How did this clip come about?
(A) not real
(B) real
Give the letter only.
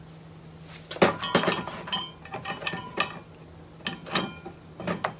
B